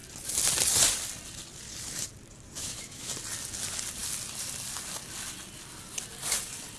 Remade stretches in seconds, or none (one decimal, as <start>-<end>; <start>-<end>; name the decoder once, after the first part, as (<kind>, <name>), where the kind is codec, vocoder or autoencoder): 2.6-3.1 (autoencoder, DAC-VAE)